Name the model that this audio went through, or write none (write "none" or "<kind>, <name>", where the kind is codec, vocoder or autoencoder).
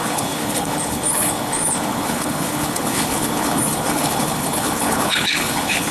codec, HILCodec